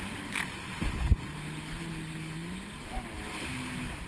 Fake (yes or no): no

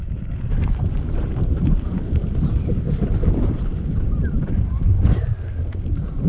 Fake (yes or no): no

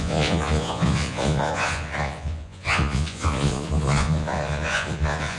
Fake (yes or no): yes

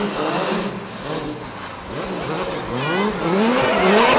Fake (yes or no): no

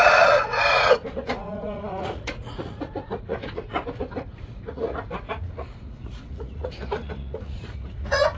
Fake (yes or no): yes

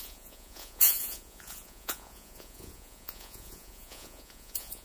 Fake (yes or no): yes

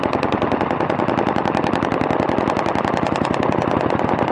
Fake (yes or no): no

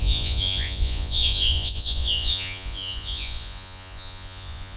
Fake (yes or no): yes